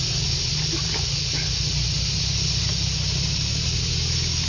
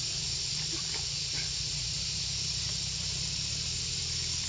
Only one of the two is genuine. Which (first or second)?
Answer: first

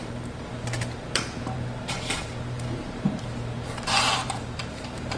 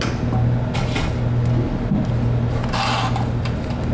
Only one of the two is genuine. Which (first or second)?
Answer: second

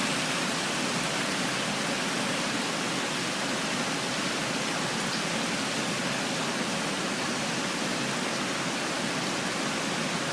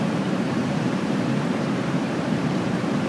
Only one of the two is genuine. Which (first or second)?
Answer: first